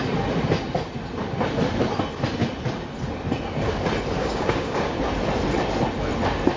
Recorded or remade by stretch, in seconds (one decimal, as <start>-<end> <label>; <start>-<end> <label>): 0.0-4.2 recorded; 4.2-4.9 remade; 4.9-6.6 recorded